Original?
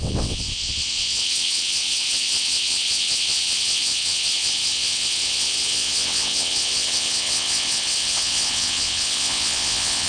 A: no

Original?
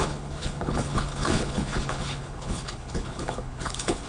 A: no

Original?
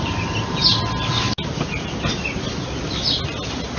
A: yes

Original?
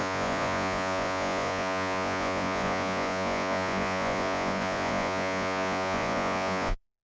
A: no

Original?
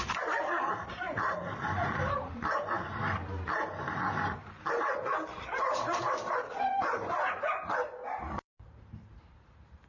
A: no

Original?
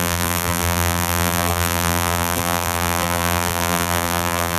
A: no